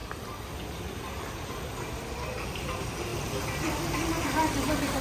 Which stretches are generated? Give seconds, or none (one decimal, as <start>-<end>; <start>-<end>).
none